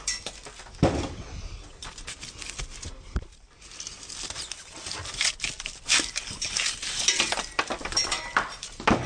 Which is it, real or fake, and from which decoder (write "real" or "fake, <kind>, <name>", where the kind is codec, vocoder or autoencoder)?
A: real